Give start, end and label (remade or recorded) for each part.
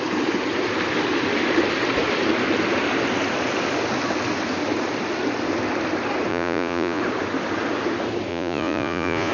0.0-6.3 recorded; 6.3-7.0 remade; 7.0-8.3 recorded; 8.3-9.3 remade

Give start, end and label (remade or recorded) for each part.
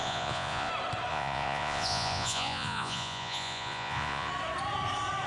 0.0-0.7 remade; 0.7-1.1 recorded; 1.1-4.3 remade; 4.3-5.3 recorded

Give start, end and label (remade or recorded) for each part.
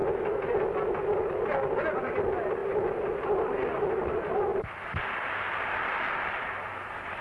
0.0-7.2 recorded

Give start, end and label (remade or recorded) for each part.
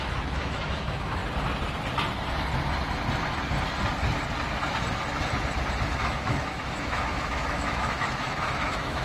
0.0-1.2 remade; 1.2-5.9 recorded; 5.9-9.0 remade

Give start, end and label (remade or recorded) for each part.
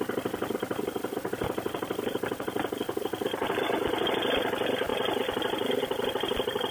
0.0-6.7 recorded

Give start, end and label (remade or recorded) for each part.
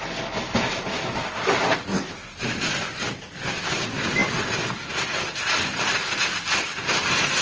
0.0-7.4 recorded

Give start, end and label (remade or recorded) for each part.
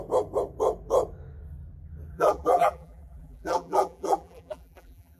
0.0-2.1 recorded; 2.1-5.2 remade